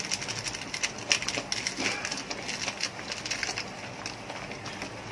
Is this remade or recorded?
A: recorded